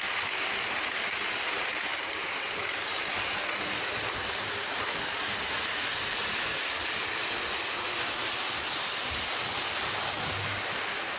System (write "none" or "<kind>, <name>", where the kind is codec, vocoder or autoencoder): none